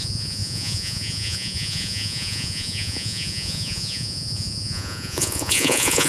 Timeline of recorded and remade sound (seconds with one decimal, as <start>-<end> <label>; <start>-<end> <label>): 0.0-6.1 remade